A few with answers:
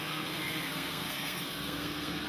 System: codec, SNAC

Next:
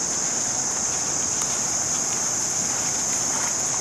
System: none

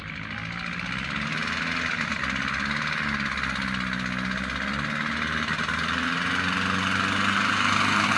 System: none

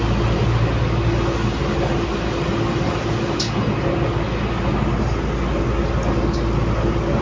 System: none